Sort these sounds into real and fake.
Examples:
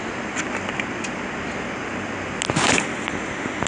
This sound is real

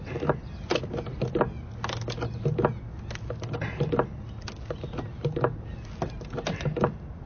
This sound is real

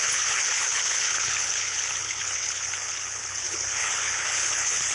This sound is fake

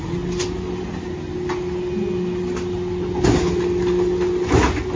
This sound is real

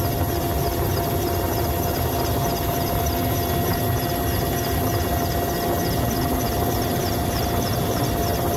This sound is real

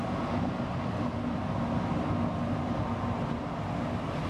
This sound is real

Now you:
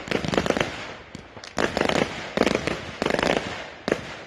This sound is real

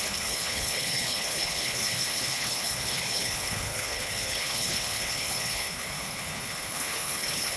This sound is fake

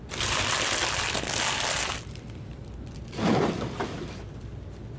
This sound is fake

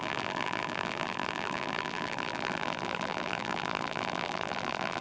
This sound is fake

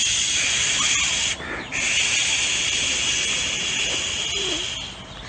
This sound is real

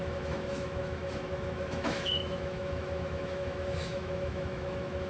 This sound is fake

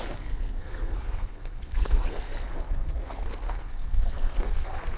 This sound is fake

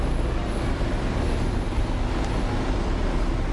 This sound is real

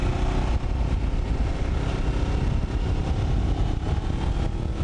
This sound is real